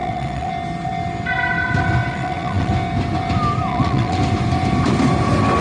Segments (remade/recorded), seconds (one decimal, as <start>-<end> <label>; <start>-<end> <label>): 0.0-0.5 remade; 0.5-2.1 recorded; 2.1-2.7 remade; 2.7-3.7 recorded; 3.7-4.2 remade; 4.2-5.6 recorded